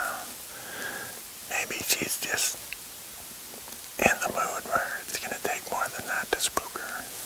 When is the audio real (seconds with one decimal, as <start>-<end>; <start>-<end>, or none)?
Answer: 0.0-5.1

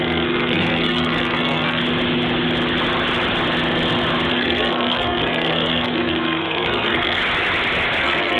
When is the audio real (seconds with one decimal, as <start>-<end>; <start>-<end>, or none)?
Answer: 1.8-4.3; 7.2-8.0

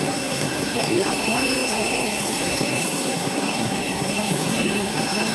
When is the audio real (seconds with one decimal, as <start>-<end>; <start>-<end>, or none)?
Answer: none

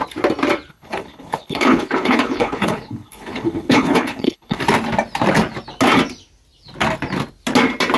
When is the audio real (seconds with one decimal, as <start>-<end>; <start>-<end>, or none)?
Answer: 0.0-0.7; 4.6-8.0

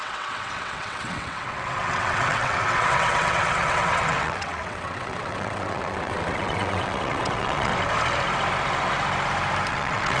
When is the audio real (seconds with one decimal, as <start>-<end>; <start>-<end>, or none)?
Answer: 7.7-9.7